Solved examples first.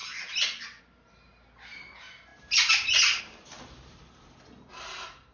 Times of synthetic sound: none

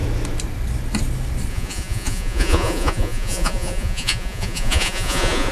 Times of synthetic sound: 1.5-5.5 (vocoder, Vocos)

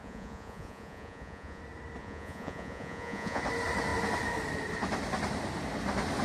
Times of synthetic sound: 0.0-1.6 (vocoder, Vocos); 2.0-3.4